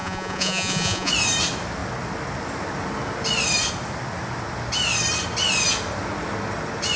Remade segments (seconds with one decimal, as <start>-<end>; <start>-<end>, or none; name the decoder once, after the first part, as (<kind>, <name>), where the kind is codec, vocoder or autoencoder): 0.0-1.1 (vocoder, Vocos)